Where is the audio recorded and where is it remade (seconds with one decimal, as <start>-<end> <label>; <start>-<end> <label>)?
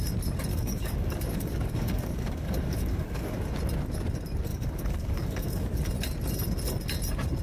0.0-0.5 recorded; 0.5-3.5 remade; 3.5-4.5 recorded; 4.5-5.9 remade; 5.9-7.4 recorded